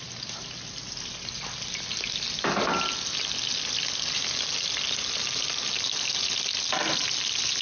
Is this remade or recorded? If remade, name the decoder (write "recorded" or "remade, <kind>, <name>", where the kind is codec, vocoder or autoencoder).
recorded